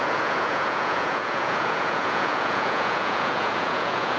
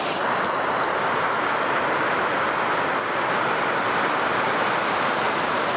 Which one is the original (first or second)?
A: second